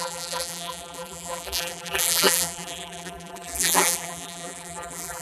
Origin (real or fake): fake